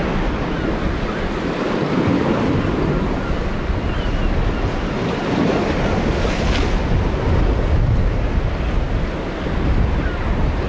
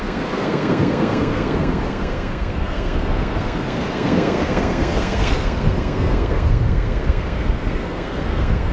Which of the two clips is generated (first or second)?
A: second